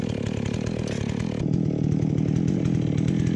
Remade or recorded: recorded